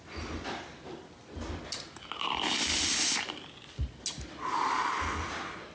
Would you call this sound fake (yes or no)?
no